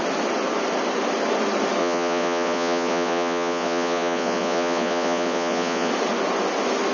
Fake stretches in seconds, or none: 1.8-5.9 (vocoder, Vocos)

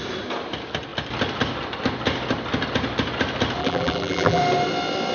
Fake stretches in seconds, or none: 3.6-4.4 (vocoder, BigVGAN v2)

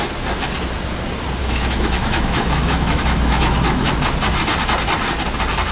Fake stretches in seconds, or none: 1.4-3.9 (autoencoder, DAC-VAE)

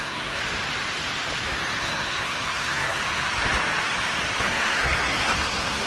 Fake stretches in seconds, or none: 0.0-0.4 (codec, SNAC); 1.8-3.0; 4.4-5.9

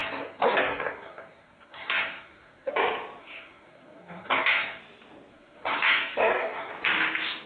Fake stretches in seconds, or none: 0.0-2.7 (codec, SNAC); 3.2-4.8; 5.3-6.7